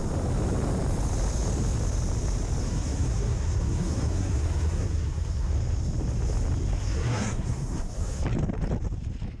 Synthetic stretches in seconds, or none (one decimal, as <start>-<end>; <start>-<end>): 2.6-5.5; 6.8-8.2